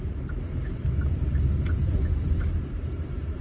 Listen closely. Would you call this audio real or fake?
real